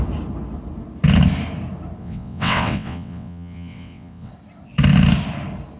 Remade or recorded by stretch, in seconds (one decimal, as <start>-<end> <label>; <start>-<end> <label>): 0.0-2.0 recorded; 2.0-4.3 remade; 4.3-5.8 recorded